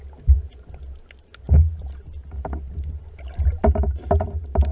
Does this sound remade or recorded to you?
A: recorded